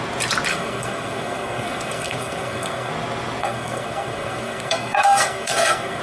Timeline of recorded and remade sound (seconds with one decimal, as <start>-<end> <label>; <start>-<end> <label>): 0.0-0.5 recorded; 0.5-2.9 remade; 2.9-3.4 recorded; 3.4-6.0 remade